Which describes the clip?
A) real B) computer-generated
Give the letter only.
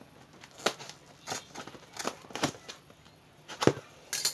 A